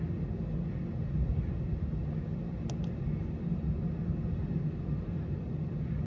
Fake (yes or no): no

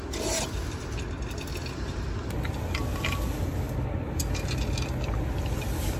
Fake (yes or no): no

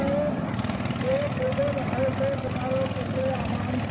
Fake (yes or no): no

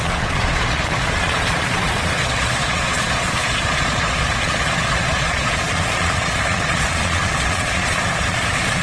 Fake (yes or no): yes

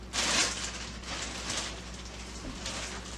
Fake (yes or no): no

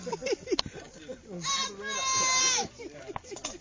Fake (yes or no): no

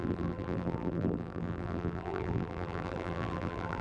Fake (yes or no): yes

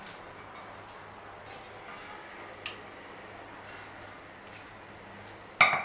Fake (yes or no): no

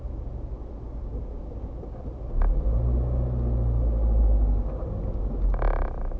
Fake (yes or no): no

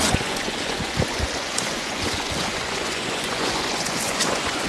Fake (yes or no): yes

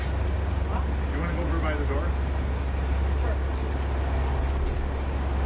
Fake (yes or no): no